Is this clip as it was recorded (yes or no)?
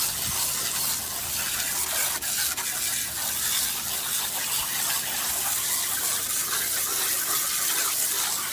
yes